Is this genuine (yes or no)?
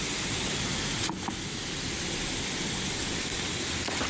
yes